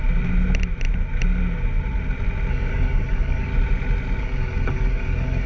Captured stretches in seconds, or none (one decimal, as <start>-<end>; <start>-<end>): 0.0-2.5; 3.5-4.2